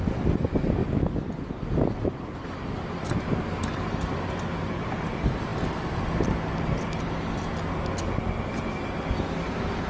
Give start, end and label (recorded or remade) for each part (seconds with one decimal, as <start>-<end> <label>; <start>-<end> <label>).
0.0-9.9 recorded